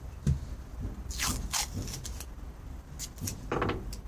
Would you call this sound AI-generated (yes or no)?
no